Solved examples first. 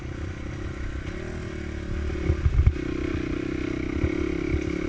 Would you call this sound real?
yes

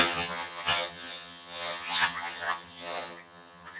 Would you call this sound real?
no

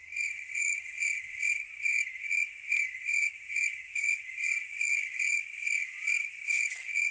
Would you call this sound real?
yes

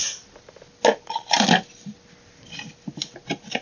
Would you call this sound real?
yes